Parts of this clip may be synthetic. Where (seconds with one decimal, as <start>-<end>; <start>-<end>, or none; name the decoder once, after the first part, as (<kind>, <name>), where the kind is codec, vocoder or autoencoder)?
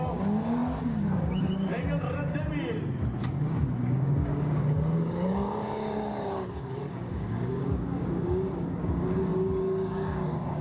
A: 0.0-1.7 (codec, DAC); 3.2-10.6